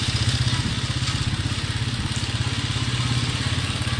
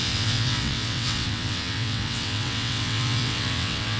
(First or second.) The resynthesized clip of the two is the second